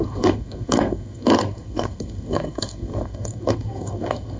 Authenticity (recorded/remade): remade